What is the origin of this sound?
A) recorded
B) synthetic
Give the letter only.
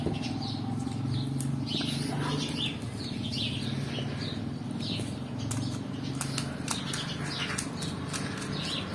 A